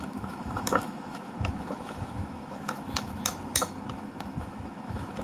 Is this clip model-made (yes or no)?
yes